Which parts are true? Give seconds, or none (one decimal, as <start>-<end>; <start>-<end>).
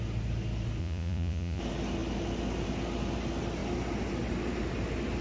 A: 0.0-0.8; 1.6-5.2